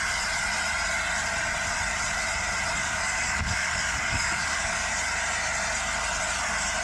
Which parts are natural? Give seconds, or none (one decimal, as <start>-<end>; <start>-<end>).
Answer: 0.0-2.8; 4.9-6.8